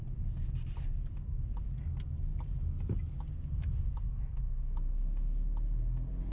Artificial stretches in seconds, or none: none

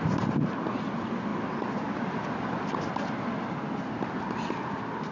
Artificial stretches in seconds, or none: none